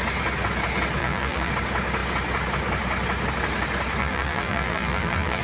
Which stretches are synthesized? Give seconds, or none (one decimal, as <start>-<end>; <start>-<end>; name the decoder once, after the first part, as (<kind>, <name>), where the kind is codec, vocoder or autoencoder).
1.0-1.5 (vocoder, BigVGAN v2); 4.0-5.4